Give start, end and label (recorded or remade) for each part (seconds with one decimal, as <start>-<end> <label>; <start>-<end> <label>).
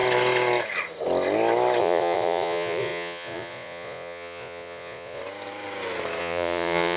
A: 0.0-1.8 recorded; 1.8-5.2 remade; 5.2-6.2 recorded; 6.2-7.0 remade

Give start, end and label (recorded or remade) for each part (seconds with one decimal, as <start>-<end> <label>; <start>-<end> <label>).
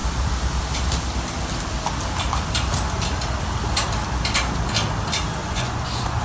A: 0.0-5.4 recorded; 5.4-6.2 remade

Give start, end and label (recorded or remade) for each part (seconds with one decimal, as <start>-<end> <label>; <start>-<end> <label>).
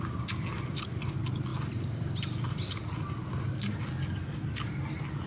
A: 0.0-5.3 recorded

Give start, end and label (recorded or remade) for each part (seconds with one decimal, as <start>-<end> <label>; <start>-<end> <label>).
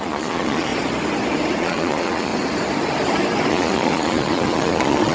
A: 0.0-0.7 remade; 0.7-1.6 recorded; 1.6-2.3 remade; 2.3-3.5 recorded; 3.5-5.1 remade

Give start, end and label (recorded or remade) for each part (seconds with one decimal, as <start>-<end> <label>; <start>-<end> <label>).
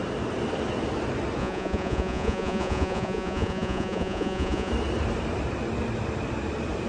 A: 0.0-1.4 recorded; 1.4-4.7 remade; 4.7-6.9 recorded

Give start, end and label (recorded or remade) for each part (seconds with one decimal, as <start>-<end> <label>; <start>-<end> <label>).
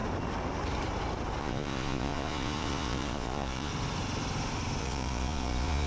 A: 0.0-1.4 recorded; 1.4-3.7 remade; 3.7-4.8 recorded; 4.8-5.9 remade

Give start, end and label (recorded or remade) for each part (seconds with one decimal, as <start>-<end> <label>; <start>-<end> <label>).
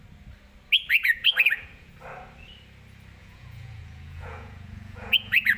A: 0.0-0.9 recorded; 0.9-1.9 remade; 1.9-3.2 recorded; 3.2-5.6 remade